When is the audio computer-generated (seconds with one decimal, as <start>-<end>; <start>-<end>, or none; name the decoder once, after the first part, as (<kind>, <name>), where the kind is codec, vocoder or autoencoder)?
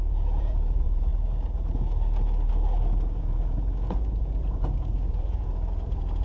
0.0-1.1 (vocoder, Vocos); 3.2-6.2